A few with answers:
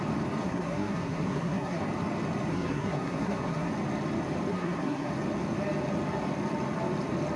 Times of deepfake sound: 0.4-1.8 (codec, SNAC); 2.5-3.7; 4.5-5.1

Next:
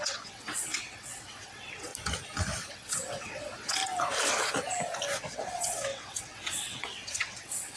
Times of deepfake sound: 0.0-1.9 (vocoder, WaveNeXt); 2.7-3.8; 5.2-7.8